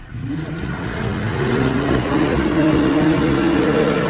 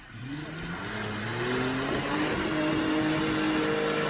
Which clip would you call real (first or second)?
second